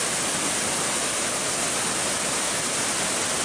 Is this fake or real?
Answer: real